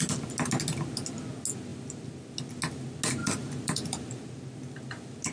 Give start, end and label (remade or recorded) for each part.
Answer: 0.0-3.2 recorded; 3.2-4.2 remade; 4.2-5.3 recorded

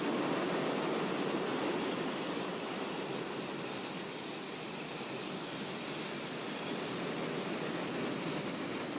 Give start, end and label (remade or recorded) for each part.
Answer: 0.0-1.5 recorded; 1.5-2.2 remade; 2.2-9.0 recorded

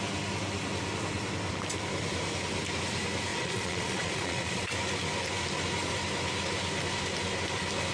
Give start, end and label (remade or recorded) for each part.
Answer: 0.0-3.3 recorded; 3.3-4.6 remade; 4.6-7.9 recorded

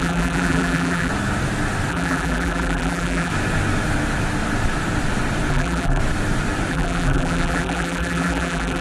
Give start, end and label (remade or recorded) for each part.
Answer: 0.0-1.1 remade; 1.1-1.9 recorded; 1.9-3.3 remade; 3.3-5.5 recorded; 5.5-6.0 remade; 6.0-6.7 recorded; 6.7-8.8 remade